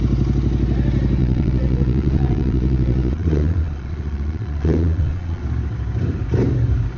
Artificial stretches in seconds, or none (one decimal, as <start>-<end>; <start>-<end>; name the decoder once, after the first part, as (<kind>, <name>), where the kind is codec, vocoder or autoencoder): 1.2-5.4 (vocoder, Vocos)